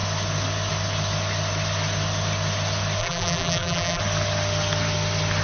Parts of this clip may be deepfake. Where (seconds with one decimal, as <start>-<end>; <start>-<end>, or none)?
3.0-4.0